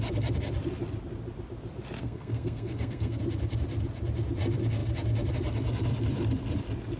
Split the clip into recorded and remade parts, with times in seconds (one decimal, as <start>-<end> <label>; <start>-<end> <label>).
0.0-2.0 recorded; 2.0-3.2 remade; 3.2-7.0 recorded

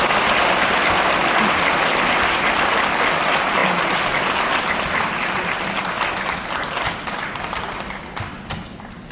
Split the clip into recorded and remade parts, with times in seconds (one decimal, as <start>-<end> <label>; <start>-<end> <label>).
0.0-9.1 recorded

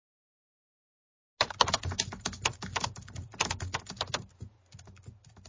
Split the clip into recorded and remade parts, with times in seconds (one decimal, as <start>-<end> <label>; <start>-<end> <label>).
0.0-5.5 recorded